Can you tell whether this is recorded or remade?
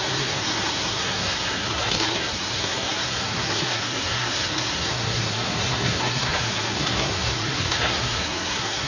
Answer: remade